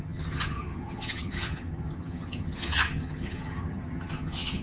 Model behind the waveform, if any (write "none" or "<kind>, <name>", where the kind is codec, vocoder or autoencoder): vocoder, HiFi-GAN